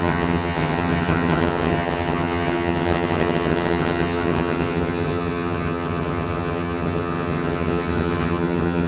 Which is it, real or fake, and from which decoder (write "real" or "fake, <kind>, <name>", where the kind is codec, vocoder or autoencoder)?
fake, vocoder, HiFi-GAN